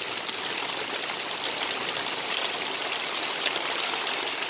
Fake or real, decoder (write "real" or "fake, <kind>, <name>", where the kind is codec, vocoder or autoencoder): real